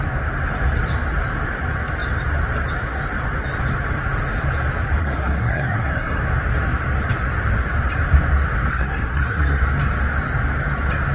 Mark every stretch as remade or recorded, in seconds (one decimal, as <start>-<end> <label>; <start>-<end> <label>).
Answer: 0.0-5.0 recorded; 5.0-6.2 remade; 6.2-8.7 recorded; 8.7-9.6 remade; 9.6-11.1 recorded